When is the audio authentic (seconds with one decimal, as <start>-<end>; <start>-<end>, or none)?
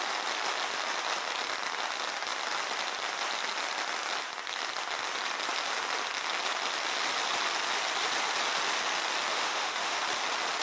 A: 0.0-9.3; 10.0-10.6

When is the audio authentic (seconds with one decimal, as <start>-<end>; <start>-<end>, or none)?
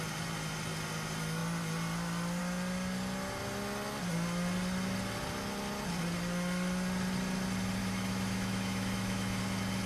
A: 0.0-7.8; 9.4-9.9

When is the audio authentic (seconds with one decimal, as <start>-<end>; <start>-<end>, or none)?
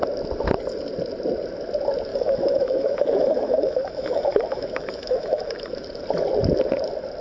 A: 0.0-2.1; 5.7-7.2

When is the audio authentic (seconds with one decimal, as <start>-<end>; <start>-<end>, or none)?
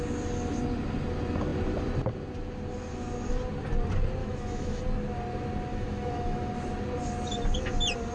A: 0.0-4.2; 4.8-5.7; 6.5-8.1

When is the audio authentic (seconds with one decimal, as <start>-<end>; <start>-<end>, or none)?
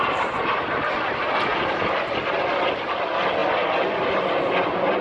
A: 0.0-5.0